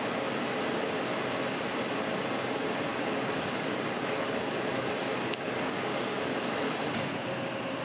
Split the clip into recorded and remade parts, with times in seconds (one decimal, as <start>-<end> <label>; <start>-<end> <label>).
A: 0.0-2.9 recorded; 2.9-6.8 remade; 6.8-7.8 recorded